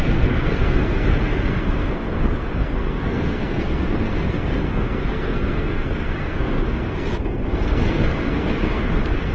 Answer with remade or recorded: remade